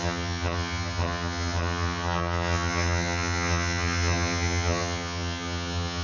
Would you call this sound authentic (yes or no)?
no